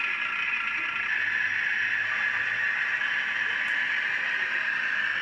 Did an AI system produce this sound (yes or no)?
no